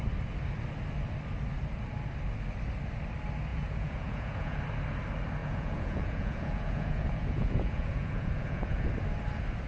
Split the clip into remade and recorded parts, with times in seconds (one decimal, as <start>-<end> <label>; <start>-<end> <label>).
0.0-3.5 recorded; 3.5-4.6 remade; 4.6-5.4 recorded; 5.4-8.9 remade; 8.9-9.7 recorded